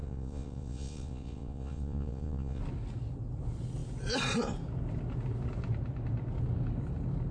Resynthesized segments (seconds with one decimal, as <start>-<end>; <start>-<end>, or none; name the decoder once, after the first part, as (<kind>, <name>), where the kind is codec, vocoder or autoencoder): 0.0-2.6 (vocoder, Vocos)